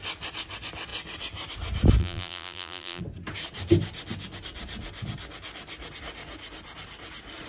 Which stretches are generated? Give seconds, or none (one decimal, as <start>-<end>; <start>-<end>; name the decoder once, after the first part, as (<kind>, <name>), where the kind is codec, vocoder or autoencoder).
2.0-3.0 (vocoder, BigVGAN v2)